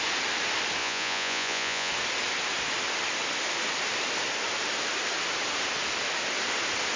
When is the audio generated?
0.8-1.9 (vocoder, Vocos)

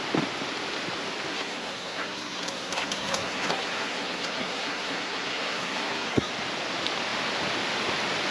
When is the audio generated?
1.3-6.3 (codec, SNAC)

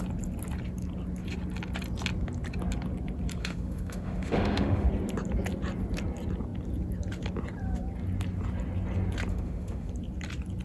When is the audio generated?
3.4-4.9 (autoencoder, DAC-VAE); 9.3-9.9

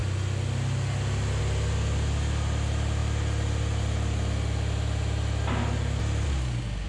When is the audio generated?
none

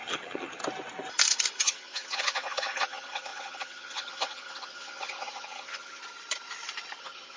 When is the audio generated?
0.0-0.6 (vocoder, HiFi-GAN); 1.6-6.0; 7.0-7.4